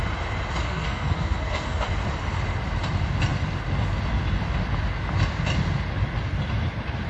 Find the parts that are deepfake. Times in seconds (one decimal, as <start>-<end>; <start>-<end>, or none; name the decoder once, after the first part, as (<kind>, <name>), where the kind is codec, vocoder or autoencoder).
0.6-1.9 (codec, SNAC)